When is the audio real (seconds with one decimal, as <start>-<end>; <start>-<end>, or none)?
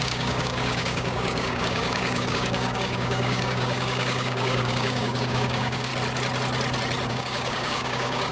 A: 5.9-7.1